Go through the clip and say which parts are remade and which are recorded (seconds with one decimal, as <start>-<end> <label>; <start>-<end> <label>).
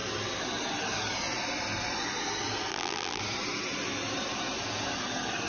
0.0-2.7 recorded; 2.7-3.2 remade; 3.2-5.5 recorded